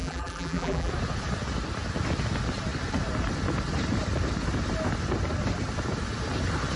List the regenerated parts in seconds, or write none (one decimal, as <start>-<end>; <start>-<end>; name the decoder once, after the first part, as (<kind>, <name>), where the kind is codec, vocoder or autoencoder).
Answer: 0.0-0.9 (vocoder, BigVGAN v2)

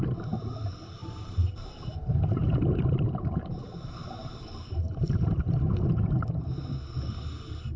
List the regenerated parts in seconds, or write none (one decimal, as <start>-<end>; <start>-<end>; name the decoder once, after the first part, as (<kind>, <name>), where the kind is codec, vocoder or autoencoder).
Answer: 1.0-5.7 (vocoder, BigVGAN v2)

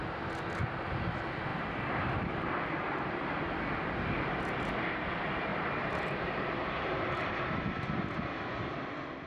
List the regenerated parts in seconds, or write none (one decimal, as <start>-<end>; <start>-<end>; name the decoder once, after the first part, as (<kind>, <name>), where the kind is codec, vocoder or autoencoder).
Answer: 1.5-3.3 (vocoder, BigVGAN v2); 5.5-7.4